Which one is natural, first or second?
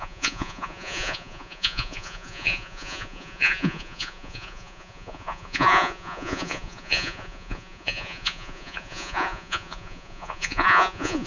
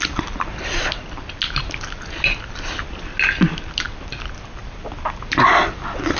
second